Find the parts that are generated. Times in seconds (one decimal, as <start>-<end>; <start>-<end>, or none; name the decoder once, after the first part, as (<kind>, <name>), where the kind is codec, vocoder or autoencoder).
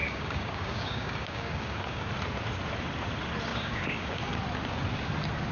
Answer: 0.0-2.1 (codec, DAC); 3.5-4.2